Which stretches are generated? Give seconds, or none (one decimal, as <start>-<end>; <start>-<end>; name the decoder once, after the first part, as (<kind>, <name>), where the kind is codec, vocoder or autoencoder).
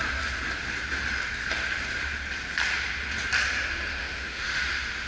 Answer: 3.9-4.6 (autoencoder, DAC-VAE)